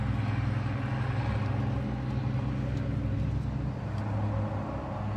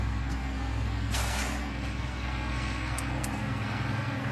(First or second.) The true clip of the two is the first